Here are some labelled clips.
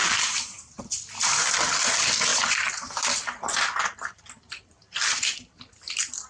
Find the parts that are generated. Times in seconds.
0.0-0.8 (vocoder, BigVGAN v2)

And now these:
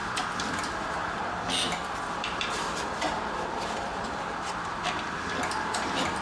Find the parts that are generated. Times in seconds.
0.0-6.2 (vocoder, BigVGAN v2)